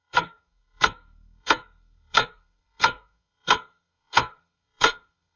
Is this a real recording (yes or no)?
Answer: no